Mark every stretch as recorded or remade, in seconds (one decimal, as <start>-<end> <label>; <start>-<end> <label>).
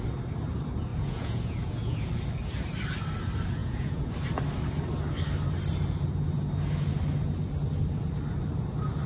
0.0-0.9 recorded; 0.9-2.1 remade; 2.1-3.6 recorded; 3.6-4.1 remade; 4.1-9.1 recorded